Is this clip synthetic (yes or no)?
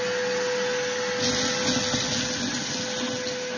no